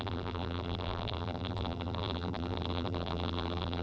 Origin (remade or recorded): remade